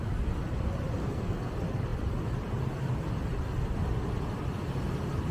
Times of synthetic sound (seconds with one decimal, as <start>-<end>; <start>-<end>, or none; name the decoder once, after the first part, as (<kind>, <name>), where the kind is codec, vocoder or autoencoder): 1.0-1.5 (codec, SNAC)